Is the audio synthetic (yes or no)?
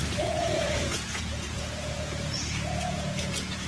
yes